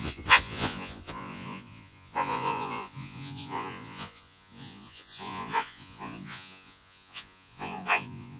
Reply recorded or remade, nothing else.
remade